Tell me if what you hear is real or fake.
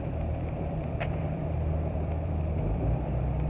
fake